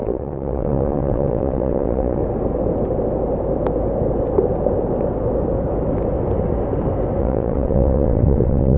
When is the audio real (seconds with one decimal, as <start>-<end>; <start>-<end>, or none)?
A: 2.2-7.2